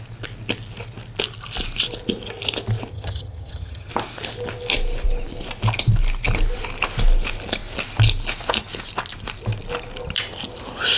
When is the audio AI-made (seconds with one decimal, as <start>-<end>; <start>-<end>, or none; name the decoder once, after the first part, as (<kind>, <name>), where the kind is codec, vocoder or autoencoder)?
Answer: 2.9-3.9 (vocoder, HiFi-GAN)